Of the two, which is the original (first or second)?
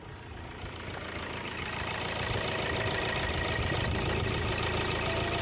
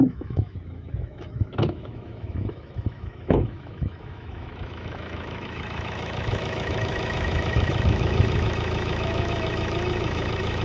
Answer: first